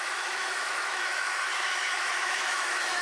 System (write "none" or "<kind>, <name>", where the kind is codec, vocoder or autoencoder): autoencoder, DAC-VAE